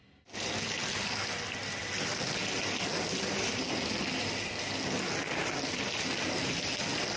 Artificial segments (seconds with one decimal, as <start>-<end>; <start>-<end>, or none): none